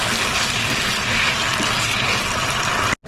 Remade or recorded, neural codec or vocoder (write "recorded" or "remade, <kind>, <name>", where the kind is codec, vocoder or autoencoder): recorded